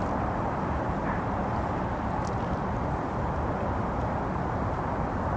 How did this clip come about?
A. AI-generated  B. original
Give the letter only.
B